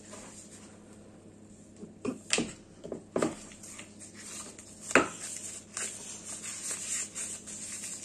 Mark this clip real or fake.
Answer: real